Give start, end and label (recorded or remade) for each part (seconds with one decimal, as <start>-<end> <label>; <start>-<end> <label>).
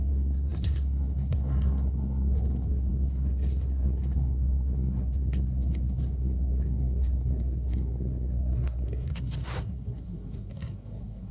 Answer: 0.0-11.3 remade